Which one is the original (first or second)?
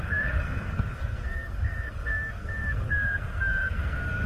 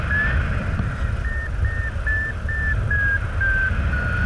second